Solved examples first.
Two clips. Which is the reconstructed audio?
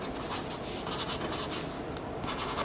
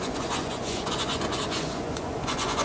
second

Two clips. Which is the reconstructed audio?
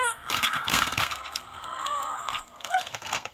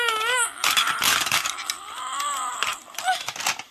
first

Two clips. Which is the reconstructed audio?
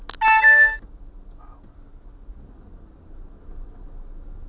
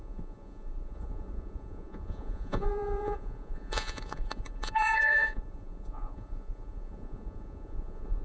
second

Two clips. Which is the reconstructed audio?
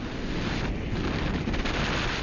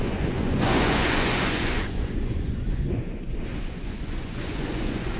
second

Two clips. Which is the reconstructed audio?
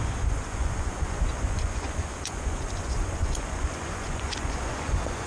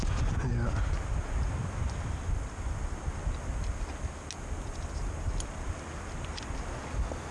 first